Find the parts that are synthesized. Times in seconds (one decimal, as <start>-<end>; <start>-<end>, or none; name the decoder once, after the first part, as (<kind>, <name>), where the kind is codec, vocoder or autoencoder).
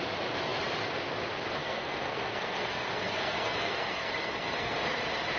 1.6-4.8 (codec, SNAC)